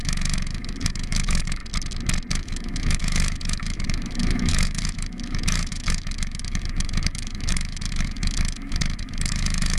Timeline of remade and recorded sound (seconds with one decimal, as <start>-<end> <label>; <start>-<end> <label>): 0.0-1.6 remade; 1.6-2.3 recorded; 2.3-9.8 remade